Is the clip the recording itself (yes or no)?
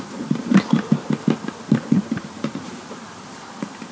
no